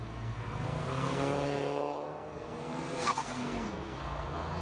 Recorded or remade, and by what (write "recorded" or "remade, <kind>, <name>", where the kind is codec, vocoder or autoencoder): remade, codec, SNAC